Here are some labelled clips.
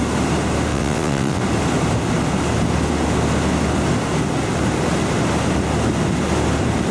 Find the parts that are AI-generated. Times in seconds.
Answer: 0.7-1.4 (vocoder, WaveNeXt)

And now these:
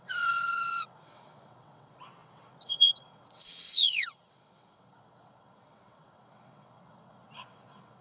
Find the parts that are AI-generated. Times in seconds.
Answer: 0.0-8.0 (vocoder, WaveNeXt)

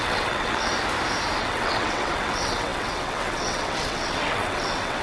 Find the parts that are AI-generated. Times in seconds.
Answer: 0.0-0.7 (vocoder, WaveNeXt); 1.4-5.0

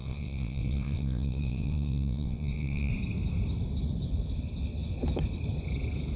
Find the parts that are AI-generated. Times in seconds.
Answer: 0.0-2.9 (vocoder, WaveNeXt)